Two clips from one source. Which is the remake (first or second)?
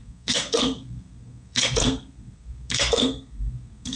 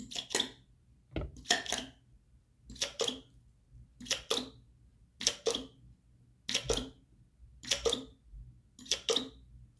first